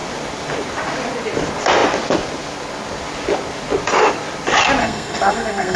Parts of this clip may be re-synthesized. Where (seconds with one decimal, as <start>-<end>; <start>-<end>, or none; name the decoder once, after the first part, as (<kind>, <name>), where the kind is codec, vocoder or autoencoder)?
4.8-5.8 (codec, SNAC)